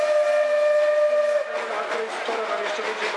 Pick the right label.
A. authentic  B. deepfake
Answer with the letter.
A